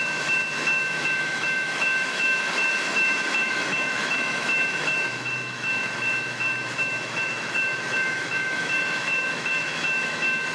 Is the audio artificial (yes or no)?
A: yes